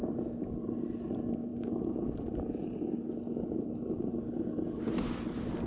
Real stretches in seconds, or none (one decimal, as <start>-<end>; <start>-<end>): 0.0-5.7